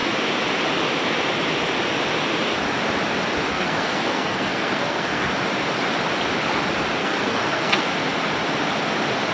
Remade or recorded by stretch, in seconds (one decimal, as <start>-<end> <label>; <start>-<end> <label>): 0.0-3.5 recorded; 3.5-5.3 remade; 5.3-7.0 recorded; 7.0-7.9 remade; 7.9-9.3 recorded

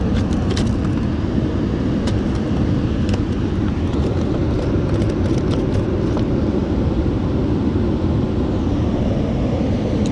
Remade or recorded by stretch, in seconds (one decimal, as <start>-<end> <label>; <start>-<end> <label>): 0.0-10.1 recorded